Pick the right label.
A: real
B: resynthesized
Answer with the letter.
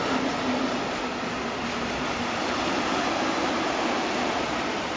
A